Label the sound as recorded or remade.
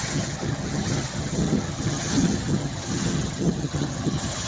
remade